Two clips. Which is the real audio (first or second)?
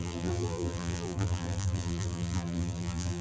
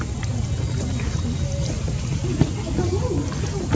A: second